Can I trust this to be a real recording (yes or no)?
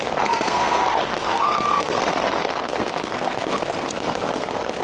no